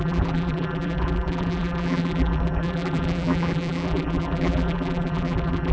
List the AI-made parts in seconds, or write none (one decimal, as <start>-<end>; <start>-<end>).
0.0-5.7